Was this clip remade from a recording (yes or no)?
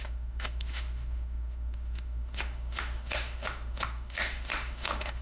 yes